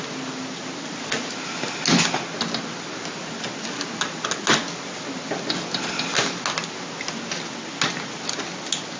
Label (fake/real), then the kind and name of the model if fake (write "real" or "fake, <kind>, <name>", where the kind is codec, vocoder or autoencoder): real